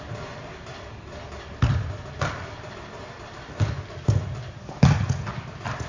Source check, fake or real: real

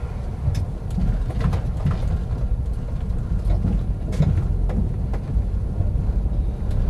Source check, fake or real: real